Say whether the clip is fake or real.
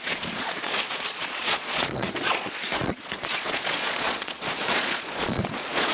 fake